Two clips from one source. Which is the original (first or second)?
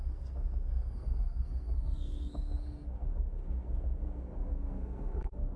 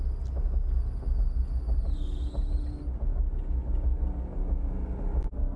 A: second